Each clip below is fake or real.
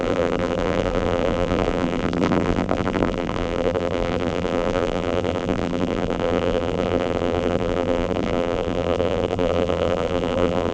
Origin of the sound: fake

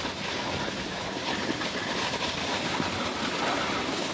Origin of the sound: fake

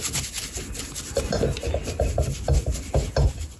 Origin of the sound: real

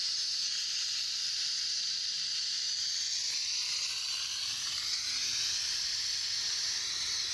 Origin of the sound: real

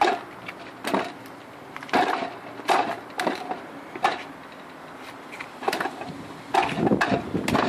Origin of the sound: fake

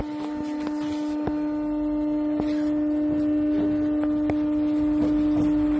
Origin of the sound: real